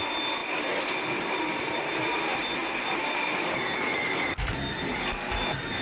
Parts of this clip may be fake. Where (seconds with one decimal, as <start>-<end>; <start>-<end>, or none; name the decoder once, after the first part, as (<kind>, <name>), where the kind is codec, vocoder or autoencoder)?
0.0-5.8 (vocoder, BigVGAN v2)